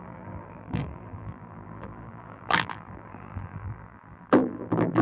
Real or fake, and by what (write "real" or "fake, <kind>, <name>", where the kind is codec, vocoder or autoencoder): fake, vocoder, BigVGAN v2